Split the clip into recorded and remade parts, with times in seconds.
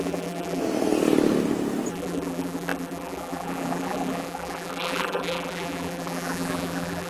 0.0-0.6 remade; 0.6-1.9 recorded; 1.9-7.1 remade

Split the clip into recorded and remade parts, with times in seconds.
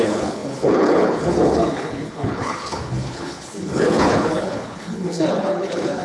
0.0-6.0 remade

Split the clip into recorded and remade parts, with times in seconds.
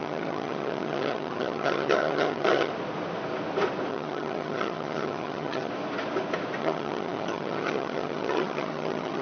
0.0-2.7 remade; 2.7-3.9 recorded; 3.9-5.7 remade; 5.7-6.6 recorded; 6.6-9.2 remade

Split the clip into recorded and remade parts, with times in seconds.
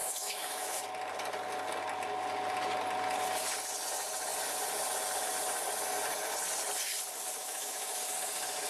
0.0-0.8 remade; 0.8-7.4 recorded; 7.4-8.0 remade; 8.0-8.7 recorded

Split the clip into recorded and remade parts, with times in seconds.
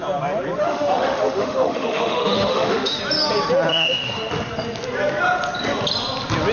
0.0-0.6 recorded; 0.6-3.0 remade; 3.0-3.7 recorded; 3.7-4.3 remade; 4.3-6.5 recorded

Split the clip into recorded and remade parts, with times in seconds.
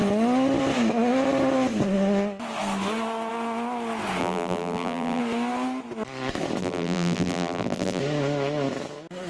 0.0-4.2 recorded; 4.2-5.2 remade; 5.2-6.6 recorded; 6.6-8.0 remade; 8.0-9.3 recorded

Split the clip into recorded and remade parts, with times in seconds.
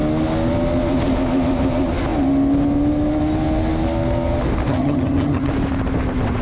0.0-4.7 recorded; 4.7-5.5 remade; 5.5-6.4 recorded